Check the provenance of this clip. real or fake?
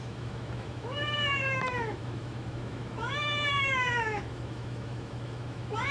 fake